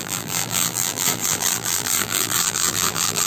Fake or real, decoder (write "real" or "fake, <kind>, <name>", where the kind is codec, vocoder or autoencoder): fake, vocoder, BigVGAN v2